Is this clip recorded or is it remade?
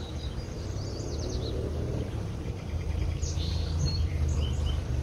remade